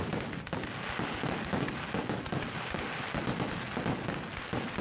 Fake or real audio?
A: real